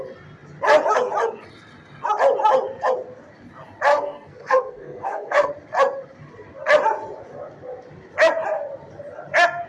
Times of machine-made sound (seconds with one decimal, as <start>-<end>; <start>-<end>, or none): 3.9-5.5